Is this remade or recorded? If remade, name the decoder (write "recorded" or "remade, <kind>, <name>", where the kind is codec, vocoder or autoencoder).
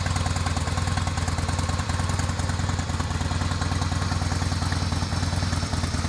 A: recorded